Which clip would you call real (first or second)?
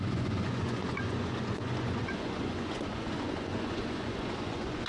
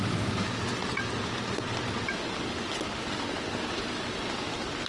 second